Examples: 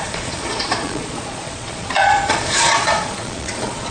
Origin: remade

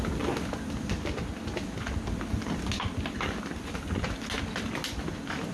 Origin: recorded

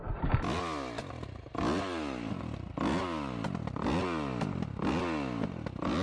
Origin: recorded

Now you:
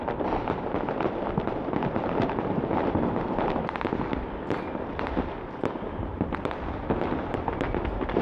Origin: remade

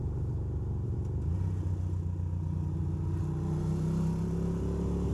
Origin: recorded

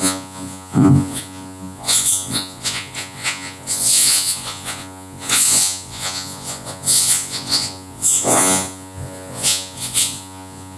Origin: remade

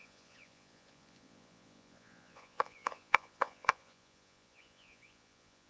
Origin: remade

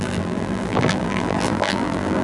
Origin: remade